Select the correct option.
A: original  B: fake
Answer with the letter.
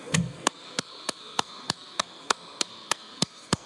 B